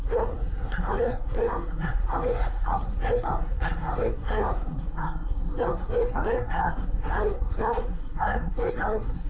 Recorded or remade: remade